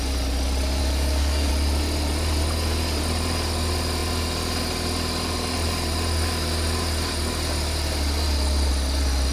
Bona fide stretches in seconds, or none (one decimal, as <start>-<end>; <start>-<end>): 0.0-0.8; 1.5-9.3